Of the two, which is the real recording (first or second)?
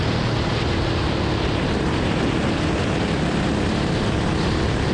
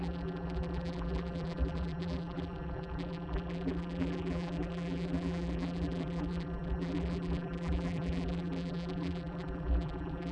first